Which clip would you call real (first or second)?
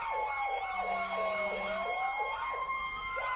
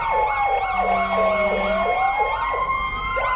second